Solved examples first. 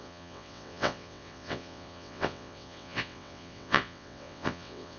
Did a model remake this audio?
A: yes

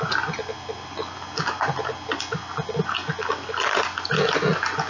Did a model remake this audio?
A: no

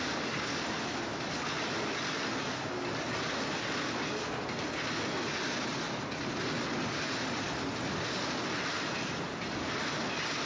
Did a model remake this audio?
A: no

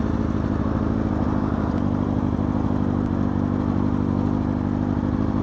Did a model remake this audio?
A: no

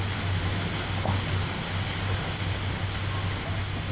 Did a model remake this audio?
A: no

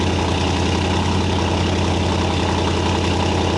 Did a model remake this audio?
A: no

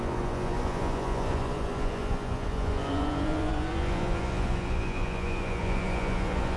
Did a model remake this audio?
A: yes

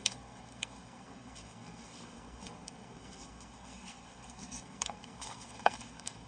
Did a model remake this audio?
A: yes